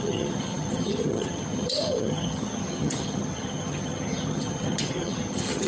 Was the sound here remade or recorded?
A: remade